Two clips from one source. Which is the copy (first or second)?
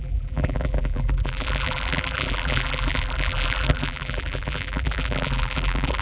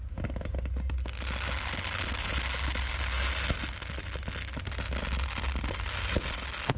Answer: first